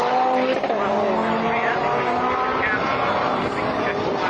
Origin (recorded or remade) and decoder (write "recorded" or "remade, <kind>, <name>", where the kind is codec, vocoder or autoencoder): recorded